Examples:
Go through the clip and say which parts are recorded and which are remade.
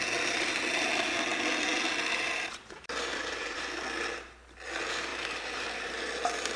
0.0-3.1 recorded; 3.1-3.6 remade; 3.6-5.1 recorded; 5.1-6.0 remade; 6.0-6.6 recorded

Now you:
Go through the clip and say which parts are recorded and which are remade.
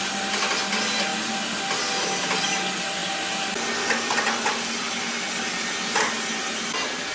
0.0-7.1 recorded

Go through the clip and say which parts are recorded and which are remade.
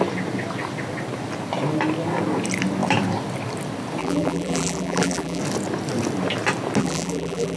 0.0-4.0 recorded; 4.0-5.4 remade; 5.4-6.8 recorded; 6.8-7.6 remade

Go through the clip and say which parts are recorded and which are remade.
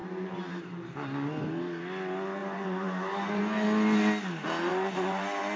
0.0-0.7 remade; 0.7-2.4 recorded; 2.4-3.4 remade; 3.4-4.7 recorded; 4.7-5.6 remade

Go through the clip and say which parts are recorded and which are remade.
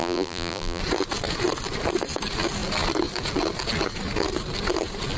0.0-0.8 remade; 0.8-5.2 recorded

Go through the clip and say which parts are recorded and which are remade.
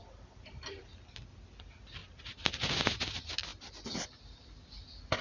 0.0-0.9 remade; 0.9-5.2 recorded